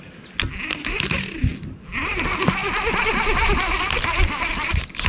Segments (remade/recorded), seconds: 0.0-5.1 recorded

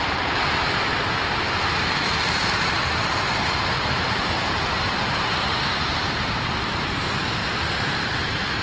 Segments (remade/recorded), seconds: 0.0-8.6 remade

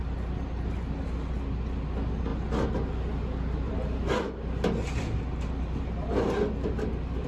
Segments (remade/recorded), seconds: 0.0-7.3 recorded

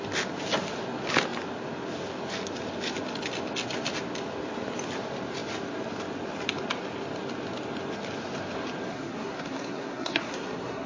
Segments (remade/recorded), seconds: 0.0-8.9 recorded; 8.9-10.9 remade

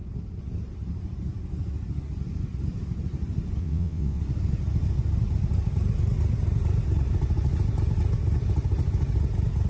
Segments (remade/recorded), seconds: 0.0-3.6 recorded; 3.6-4.2 remade; 4.2-9.7 recorded

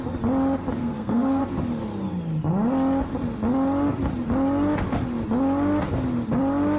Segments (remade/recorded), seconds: 0.0-0.8 recorded; 0.8-1.4 remade; 1.4-6.8 recorded

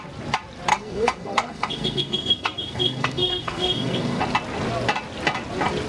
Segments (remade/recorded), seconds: 0.0-0.7 recorded; 0.7-4.2 remade; 4.2-5.9 recorded

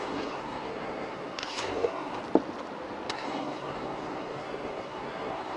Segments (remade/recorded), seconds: 0.0-2.2 remade; 2.2-3.1 recorded; 3.1-5.6 remade